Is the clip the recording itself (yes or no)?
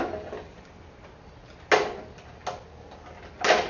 yes